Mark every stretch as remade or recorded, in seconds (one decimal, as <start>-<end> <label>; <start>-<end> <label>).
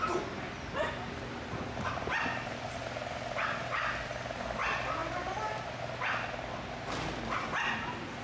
0.0-8.2 recorded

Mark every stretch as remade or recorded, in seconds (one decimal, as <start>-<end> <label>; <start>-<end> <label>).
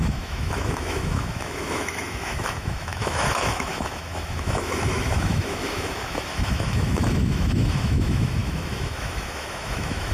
0.0-10.1 remade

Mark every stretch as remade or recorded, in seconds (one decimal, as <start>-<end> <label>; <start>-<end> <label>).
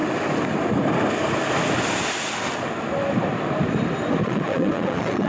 0.0-4.2 recorded; 4.2-5.3 remade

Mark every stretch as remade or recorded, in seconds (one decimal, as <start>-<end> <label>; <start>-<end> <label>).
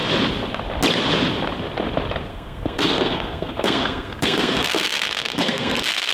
0.0-2.3 recorded; 2.3-6.1 remade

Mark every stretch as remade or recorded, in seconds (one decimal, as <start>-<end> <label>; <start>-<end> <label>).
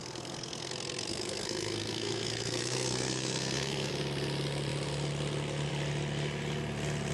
0.0-0.7 remade; 0.7-1.1 recorded; 1.1-3.9 remade; 3.9-7.1 recorded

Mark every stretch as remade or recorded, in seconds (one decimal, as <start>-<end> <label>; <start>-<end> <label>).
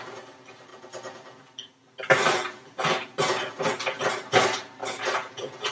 0.0-0.7 remade; 0.7-4.1 recorded; 4.1-4.8 remade; 4.8-5.7 recorded